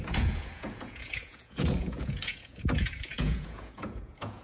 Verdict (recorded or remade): remade